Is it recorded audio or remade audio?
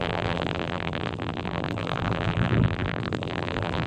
remade